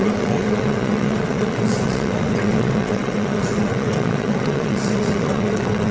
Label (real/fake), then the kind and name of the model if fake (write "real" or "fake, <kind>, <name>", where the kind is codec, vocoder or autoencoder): fake, vocoder, WaveNeXt